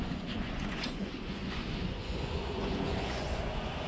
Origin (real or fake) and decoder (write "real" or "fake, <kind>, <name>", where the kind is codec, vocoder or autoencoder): fake, vocoder, Vocos